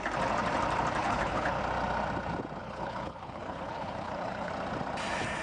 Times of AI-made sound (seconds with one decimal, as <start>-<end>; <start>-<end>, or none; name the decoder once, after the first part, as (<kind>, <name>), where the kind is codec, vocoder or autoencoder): 1.0-1.6 (codec, HILCodec); 2.6-4.5